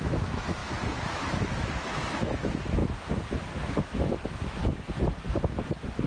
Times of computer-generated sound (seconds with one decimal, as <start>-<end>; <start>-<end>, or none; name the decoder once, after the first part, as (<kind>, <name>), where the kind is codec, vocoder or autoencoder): 0.0-2.8 (autoencoder, DAC-VAE); 3.6-4.6